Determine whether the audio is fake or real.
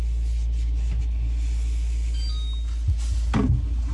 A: real